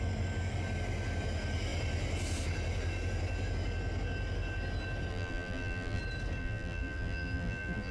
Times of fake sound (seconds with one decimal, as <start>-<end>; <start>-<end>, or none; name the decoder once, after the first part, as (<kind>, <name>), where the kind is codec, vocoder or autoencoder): 5.1-6.0 (vocoder, BigVGAN v2); 6.4-7.9